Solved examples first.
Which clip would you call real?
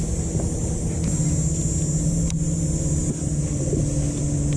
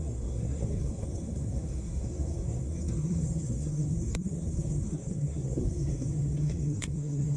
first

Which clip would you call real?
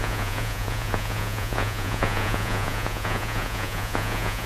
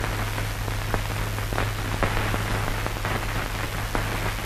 second